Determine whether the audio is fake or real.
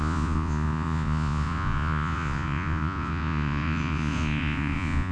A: fake